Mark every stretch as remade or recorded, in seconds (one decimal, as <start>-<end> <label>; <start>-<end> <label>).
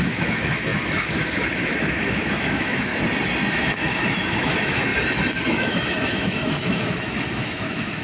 0.0-2.9 remade; 2.9-3.5 recorded; 3.5-4.9 remade; 4.9-5.5 recorded; 5.5-8.0 remade